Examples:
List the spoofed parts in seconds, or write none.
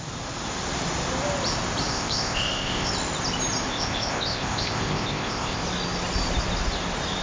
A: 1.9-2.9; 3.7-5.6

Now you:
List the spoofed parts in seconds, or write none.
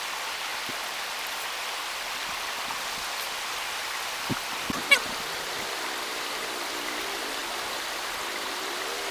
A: 0.0-0.5; 1.4-2.2; 3.4-3.8; 4.8-9.1